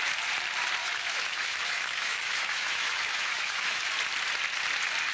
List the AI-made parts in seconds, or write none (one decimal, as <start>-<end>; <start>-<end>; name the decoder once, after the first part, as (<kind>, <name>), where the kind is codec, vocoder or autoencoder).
0.8-3.9 (autoencoder, DAC-VAE)